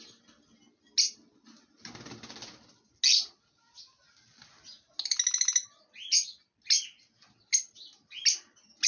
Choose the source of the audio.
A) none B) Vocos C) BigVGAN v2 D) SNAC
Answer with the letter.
A